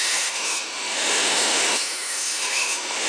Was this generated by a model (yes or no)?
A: yes